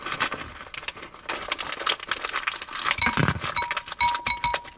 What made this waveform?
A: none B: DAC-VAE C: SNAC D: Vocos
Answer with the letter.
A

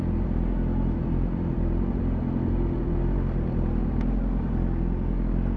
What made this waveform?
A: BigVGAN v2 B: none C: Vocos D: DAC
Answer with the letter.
B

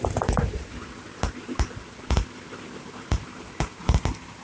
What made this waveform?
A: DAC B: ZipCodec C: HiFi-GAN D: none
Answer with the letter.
D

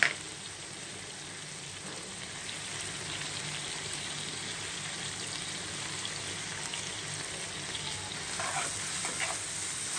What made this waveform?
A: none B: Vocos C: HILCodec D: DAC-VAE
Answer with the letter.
A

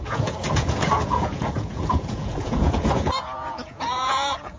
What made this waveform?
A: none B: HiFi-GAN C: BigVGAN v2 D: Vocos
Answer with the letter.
D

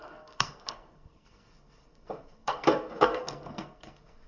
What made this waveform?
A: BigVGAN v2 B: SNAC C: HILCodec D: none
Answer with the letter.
B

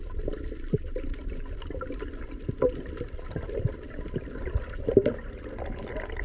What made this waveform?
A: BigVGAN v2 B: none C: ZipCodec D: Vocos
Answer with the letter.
B